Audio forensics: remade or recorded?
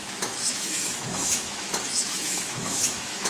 remade